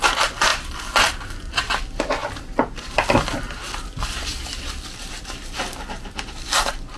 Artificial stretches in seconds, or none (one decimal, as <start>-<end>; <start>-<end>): 0.5-1.1